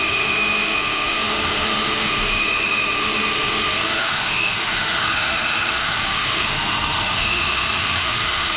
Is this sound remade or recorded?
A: remade